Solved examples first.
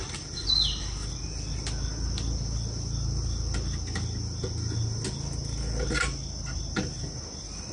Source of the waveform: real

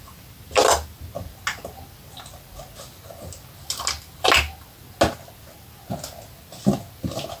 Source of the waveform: real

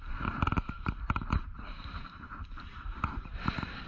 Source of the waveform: fake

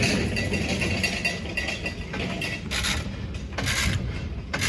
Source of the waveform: real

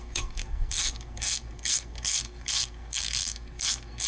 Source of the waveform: fake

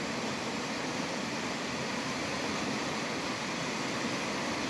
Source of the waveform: real